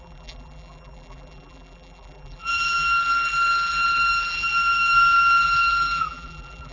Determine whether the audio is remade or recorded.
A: remade